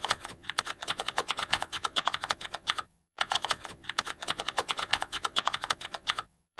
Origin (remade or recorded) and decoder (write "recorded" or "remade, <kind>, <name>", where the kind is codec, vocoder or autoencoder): remade, vocoder, Vocos